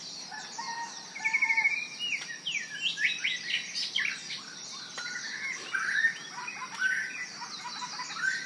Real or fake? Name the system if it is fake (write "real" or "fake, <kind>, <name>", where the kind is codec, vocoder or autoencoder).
real